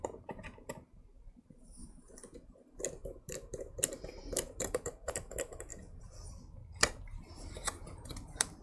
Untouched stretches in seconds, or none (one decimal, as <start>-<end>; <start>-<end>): 1.8-3.1; 5.7-6.3

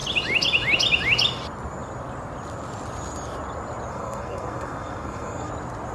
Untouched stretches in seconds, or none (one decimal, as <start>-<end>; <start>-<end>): 0.0-3.9; 5.5-5.9

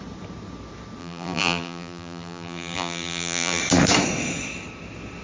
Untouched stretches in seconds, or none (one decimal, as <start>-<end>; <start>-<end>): 0.0-1.0; 3.6-5.2

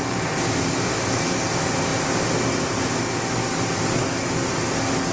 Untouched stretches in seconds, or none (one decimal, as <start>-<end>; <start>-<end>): 0.0-5.1

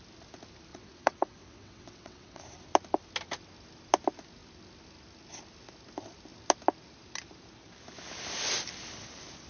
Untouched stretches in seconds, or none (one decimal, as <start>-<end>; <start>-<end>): 0.0-0.7; 2.4-9.5